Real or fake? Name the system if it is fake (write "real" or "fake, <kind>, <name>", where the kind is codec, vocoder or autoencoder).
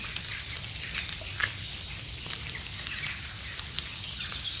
real